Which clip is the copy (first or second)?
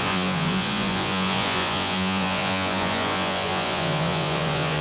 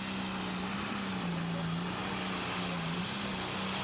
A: first